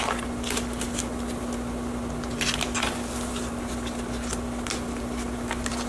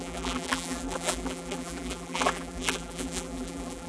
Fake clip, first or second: second